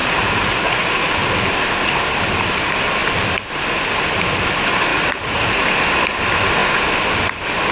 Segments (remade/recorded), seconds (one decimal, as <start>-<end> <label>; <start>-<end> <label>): 0.0-1.1 remade; 1.1-4.9 recorded; 4.9-5.6 remade; 5.6-7.7 recorded